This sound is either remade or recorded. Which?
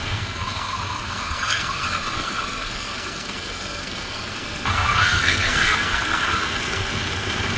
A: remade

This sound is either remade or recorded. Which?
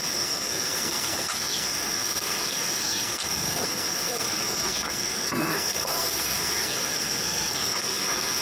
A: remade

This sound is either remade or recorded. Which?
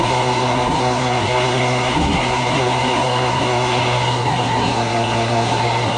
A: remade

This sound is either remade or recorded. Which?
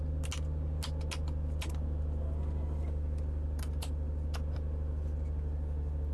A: recorded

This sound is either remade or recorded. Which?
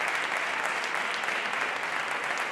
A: recorded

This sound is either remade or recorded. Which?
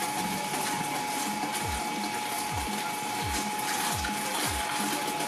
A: recorded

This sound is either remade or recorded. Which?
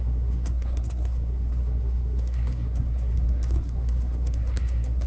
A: remade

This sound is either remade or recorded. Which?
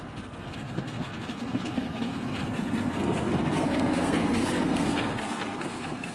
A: remade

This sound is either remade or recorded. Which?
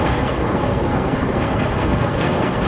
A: remade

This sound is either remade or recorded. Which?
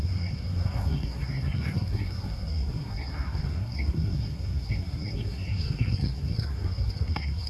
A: remade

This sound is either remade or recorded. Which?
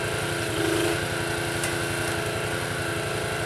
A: recorded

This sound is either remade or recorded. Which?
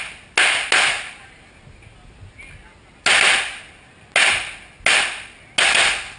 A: recorded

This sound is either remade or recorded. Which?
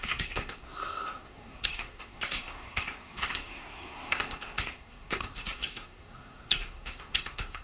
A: remade